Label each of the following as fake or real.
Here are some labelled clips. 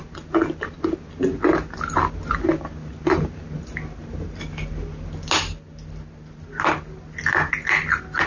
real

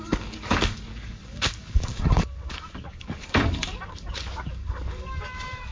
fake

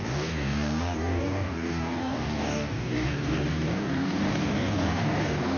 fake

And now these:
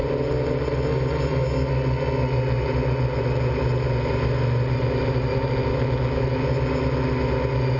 real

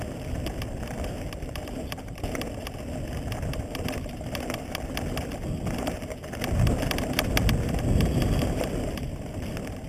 real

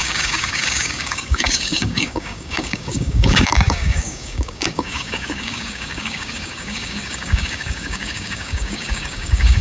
fake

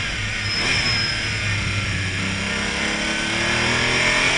real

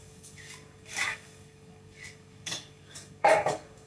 fake